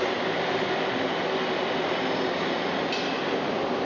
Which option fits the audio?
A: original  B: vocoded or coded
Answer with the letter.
A